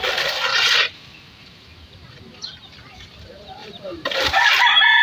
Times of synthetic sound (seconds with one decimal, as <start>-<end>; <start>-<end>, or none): 0.5-2.1; 3.6-4.5